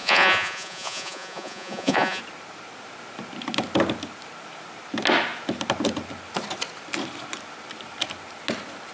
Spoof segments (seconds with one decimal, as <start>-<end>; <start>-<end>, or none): 0.0-2.2